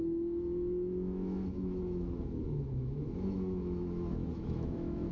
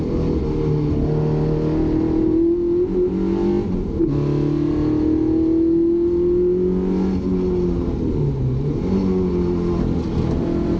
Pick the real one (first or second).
second